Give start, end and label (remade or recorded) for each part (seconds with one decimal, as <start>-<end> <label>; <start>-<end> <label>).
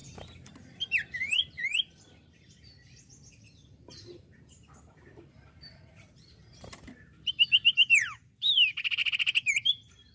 0.0-9.0 remade; 9.0-10.1 recorded